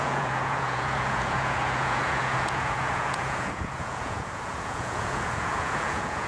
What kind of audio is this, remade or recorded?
remade